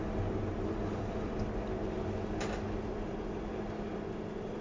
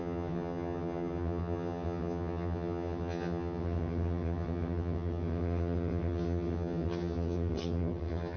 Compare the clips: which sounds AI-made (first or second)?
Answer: second